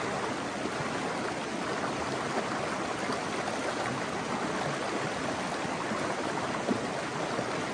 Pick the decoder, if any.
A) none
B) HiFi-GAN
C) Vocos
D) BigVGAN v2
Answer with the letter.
A